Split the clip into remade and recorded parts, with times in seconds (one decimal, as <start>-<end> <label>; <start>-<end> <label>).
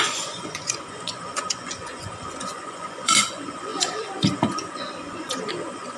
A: 0.0-6.0 remade